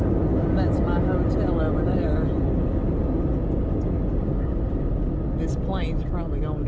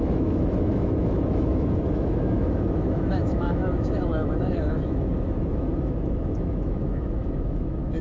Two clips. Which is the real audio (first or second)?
first